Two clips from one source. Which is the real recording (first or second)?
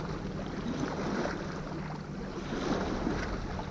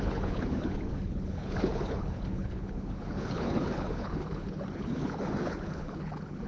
first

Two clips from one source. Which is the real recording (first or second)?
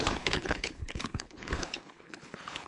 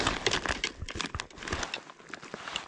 second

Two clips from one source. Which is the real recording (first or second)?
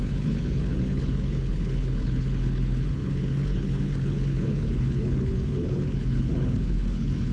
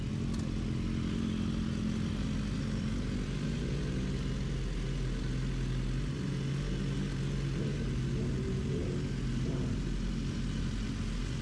second